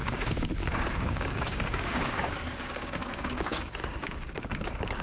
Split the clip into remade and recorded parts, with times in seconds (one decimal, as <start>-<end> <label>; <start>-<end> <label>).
0.0-5.0 remade